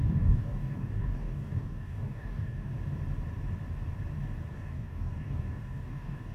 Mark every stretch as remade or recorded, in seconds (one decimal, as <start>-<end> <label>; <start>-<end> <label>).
0.0-2.7 remade; 2.7-4.5 recorded; 4.5-6.3 remade